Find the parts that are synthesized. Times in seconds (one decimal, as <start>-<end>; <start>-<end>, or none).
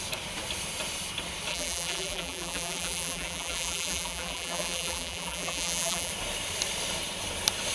1.5-6.1